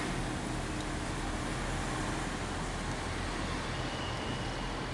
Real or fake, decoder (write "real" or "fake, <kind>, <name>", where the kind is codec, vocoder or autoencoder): real